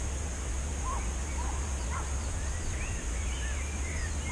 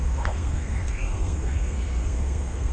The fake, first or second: second